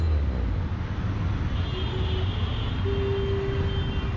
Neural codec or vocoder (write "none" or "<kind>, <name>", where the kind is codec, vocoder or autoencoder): none